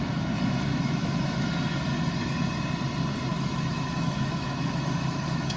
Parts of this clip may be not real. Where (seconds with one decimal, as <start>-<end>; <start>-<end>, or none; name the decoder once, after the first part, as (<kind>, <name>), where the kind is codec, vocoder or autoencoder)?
0.7-1.5 (autoencoder, DAC-VAE); 3.3-5.6